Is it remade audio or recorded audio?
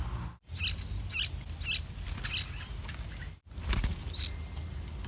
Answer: recorded